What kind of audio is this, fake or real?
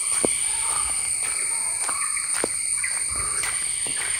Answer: real